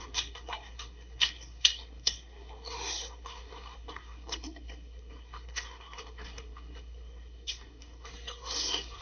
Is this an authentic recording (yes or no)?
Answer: no